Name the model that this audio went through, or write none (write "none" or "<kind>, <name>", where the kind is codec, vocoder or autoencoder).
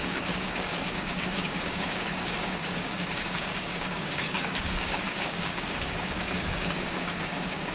codec, DAC